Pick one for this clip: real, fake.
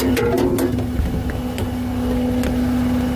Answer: real